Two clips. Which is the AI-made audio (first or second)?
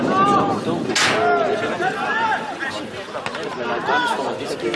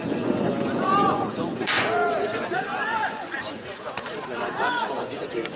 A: second